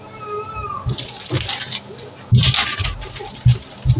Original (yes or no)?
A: yes